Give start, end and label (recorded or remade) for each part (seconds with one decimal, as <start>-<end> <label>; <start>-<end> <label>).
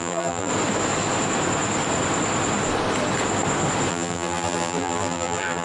0.0-0.5 remade; 0.5-3.9 recorded; 3.9-5.6 remade